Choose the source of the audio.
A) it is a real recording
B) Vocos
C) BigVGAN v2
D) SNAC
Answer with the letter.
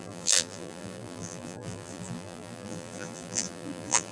C